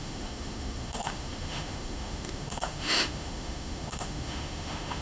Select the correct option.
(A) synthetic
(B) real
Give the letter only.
A